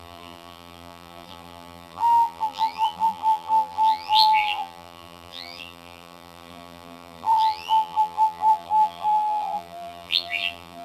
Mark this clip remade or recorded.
remade